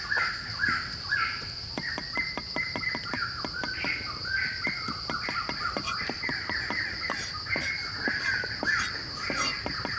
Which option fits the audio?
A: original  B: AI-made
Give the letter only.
A